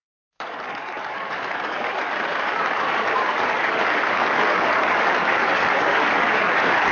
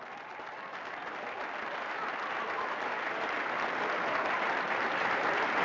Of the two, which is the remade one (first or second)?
first